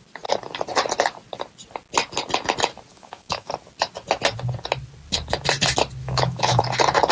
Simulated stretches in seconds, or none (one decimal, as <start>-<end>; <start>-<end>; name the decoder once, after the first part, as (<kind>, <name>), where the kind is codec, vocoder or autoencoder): 2.9-3.5 (autoencoder, DAC-VAE); 6.0-6.6